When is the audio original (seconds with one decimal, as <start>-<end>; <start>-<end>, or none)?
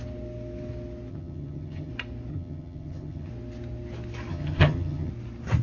0.0-1.1; 1.9-2.3; 3.3-4.3; 5.1-5.6